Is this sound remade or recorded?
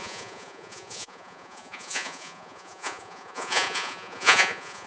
remade